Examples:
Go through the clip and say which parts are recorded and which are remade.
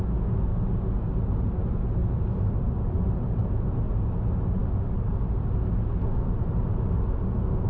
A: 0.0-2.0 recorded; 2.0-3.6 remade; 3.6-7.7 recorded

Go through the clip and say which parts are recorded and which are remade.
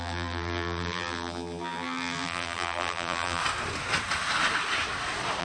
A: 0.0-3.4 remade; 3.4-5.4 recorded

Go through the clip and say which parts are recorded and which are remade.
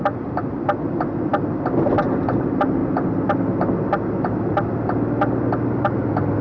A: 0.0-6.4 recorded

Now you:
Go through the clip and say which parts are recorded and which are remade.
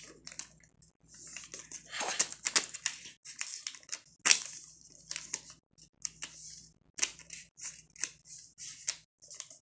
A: 0.0-7.1 recorded; 7.1-7.9 remade; 7.9-9.7 recorded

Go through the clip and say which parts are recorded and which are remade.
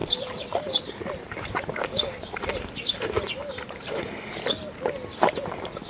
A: 0.0-0.8 remade; 0.8-3.4 recorded; 3.4-4.1 remade; 4.1-5.9 recorded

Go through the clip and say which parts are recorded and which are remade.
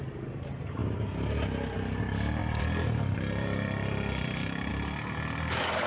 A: 0.0-2.4 recorded; 2.4-4.7 remade; 4.7-5.9 recorded